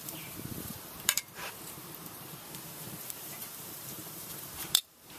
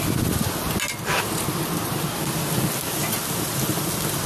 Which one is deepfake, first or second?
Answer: first